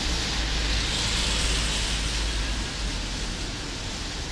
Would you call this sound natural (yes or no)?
yes